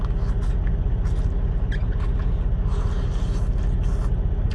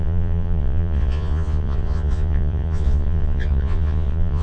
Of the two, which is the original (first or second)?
first